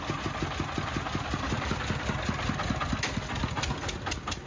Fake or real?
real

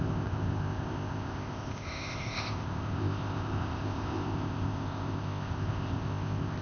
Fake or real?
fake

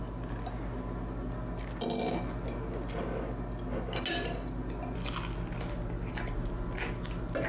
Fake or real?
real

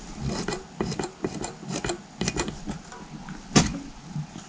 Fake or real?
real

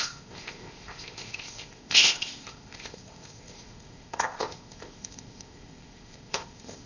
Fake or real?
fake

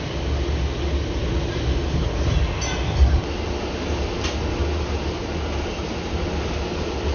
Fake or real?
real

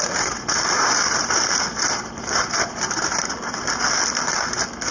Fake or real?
real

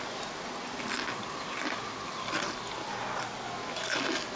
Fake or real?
real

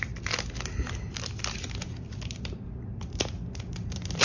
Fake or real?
real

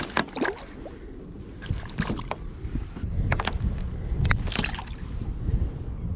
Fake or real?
real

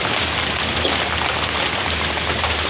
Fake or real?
real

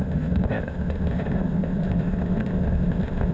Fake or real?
fake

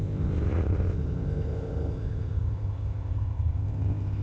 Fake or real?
fake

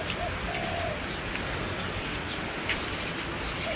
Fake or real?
real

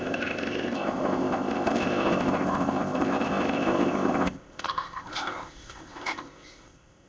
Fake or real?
fake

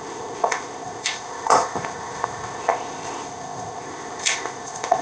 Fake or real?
fake